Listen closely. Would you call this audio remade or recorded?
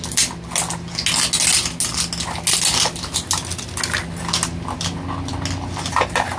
recorded